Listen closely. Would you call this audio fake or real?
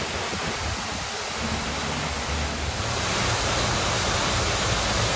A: real